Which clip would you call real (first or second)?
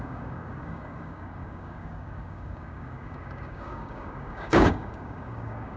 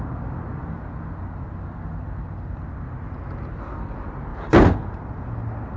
second